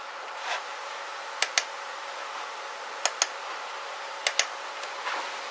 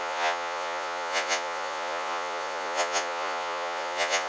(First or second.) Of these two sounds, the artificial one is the second